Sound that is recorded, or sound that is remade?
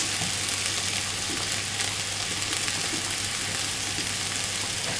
recorded